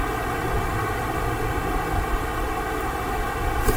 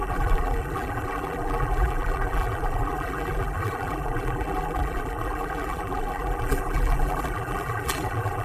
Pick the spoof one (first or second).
second